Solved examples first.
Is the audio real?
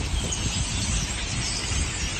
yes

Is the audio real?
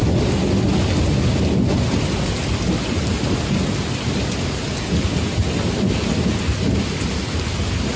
yes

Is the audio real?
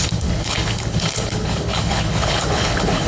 no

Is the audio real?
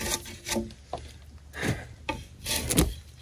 yes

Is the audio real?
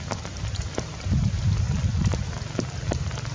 yes